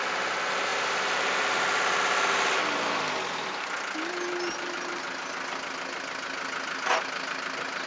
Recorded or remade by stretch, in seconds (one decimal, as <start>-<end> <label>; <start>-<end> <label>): 0.0-7.9 recorded